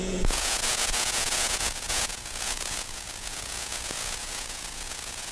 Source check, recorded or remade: remade